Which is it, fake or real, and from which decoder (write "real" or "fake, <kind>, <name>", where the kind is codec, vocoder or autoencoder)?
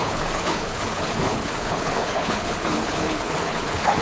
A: fake, codec, HILCodec